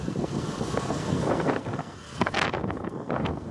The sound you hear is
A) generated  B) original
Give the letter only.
A